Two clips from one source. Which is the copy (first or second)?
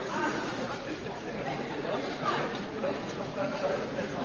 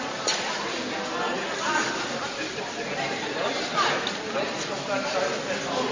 first